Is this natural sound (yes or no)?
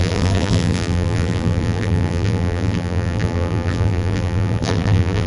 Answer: no